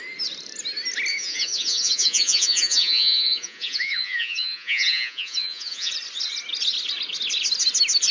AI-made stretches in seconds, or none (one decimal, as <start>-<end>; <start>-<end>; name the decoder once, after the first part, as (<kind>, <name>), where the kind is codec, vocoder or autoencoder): 1.1-5.9 (vocoder, Vocos)